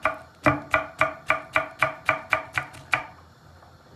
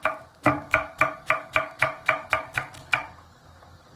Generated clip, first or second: second